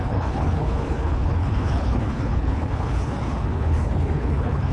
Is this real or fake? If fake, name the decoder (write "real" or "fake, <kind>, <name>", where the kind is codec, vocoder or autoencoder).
fake, codec, HILCodec